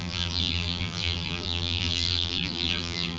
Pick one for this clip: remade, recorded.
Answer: remade